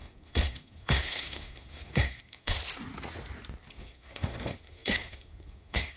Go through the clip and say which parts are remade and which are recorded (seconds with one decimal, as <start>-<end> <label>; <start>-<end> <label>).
0.0-2.6 remade; 2.6-3.7 recorded; 3.7-6.0 remade